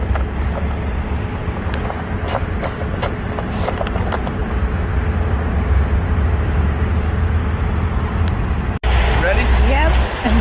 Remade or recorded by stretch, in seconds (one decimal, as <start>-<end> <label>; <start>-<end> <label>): 0.0-10.4 recorded